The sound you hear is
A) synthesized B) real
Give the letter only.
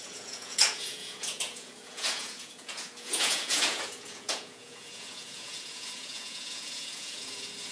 A